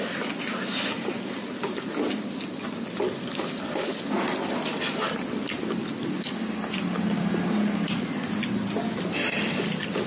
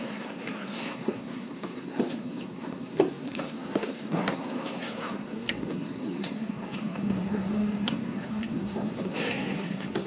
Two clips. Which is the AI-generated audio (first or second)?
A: second